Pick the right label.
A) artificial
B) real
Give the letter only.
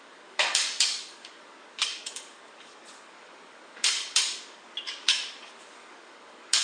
A